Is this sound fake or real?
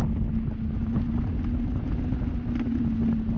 real